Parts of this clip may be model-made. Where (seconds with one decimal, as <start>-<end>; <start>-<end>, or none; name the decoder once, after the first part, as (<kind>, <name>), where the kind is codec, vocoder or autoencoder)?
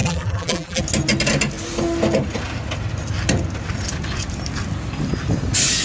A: 0.0-0.8 (vocoder, BigVGAN v2)